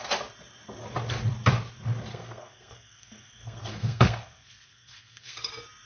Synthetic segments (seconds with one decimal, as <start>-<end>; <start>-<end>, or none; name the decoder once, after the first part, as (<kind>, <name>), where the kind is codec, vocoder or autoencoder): 2.1-5.5 (codec, SNAC)